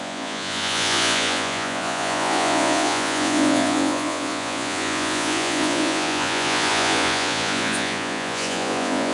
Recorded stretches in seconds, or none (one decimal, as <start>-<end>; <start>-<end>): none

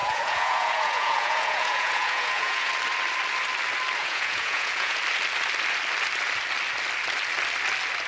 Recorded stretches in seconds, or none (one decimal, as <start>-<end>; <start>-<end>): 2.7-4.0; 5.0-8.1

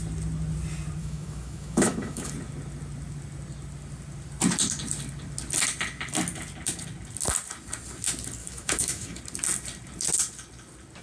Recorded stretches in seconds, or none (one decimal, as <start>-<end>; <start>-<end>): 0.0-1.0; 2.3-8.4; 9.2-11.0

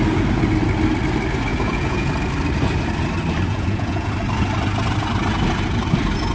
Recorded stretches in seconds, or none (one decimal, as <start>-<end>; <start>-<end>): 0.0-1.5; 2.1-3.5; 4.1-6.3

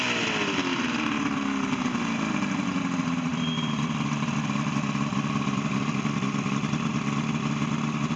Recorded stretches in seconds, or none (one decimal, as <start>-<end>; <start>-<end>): 0.0-3.3; 4.3-5.1; 6.9-8.2

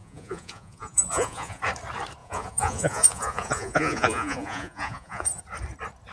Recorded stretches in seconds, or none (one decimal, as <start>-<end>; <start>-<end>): 1.6-2.2; 5.4-6.1

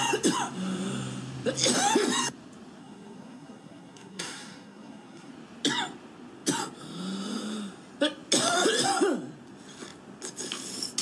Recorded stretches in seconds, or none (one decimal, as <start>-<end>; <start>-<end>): 0.0-2.8; 5.3-11.0

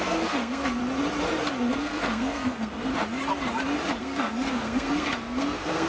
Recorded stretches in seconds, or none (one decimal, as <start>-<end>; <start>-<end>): 0.8-1.7; 2.9-4.0